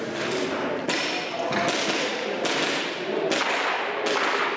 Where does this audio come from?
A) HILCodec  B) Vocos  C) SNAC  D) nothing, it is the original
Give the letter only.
D